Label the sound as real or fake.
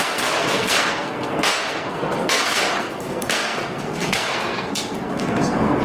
fake